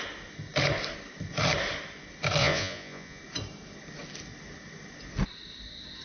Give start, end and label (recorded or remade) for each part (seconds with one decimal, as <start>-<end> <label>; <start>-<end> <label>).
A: 0.0-2.4 recorded; 2.4-3.2 remade; 3.2-6.0 recorded